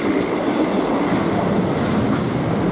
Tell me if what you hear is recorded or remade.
recorded